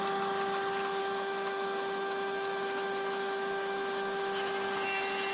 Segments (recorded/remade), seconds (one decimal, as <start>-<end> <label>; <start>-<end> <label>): 0.0-1.0 recorded; 1.0-4.2 remade; 4.2-5.3 recorded